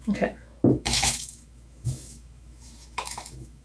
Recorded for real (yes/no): no